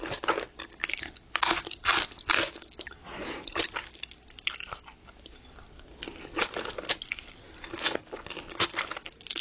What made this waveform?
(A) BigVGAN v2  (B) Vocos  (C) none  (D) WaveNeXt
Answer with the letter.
C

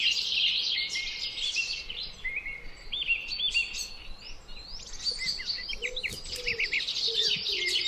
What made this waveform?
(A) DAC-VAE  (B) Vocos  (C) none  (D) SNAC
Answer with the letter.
C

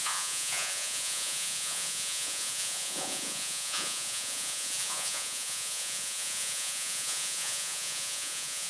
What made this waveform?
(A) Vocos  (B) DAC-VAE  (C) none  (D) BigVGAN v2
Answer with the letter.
A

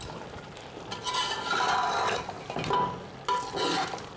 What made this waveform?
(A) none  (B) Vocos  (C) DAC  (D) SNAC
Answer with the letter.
A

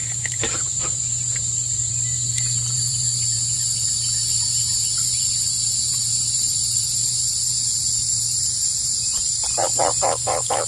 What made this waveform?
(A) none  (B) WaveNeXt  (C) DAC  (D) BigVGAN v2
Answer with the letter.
D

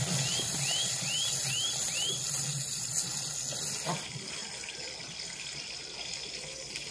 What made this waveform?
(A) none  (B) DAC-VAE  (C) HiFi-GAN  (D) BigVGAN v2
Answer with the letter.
A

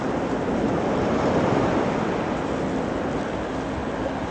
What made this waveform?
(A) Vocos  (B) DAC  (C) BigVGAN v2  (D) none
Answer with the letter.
D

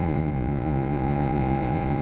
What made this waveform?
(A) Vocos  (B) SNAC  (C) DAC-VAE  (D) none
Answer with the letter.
A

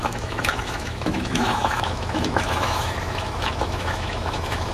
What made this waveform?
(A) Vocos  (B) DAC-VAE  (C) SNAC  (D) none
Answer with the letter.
B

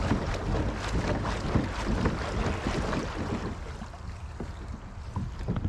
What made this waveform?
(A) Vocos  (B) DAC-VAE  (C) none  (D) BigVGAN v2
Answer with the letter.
C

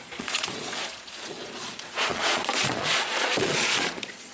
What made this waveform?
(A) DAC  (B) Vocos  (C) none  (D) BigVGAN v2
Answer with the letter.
B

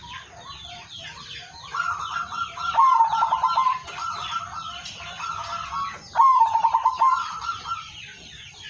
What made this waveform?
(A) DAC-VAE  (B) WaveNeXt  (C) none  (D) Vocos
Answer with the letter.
C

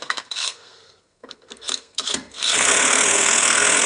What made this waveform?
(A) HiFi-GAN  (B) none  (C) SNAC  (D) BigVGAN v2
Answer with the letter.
C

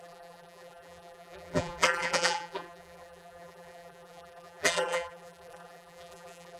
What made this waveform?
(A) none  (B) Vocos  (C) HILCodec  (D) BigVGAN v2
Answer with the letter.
D